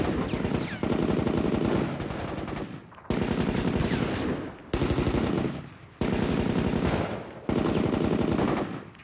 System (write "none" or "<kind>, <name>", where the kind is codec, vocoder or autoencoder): none